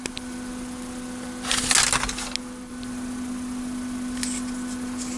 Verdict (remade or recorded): recorded